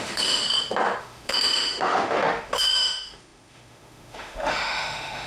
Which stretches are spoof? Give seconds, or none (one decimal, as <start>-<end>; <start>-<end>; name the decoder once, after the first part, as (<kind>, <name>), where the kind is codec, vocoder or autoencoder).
0.0-0.4 (autoencoder, DAC-VAE); 1.0-5.3